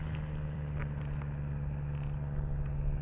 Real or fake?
real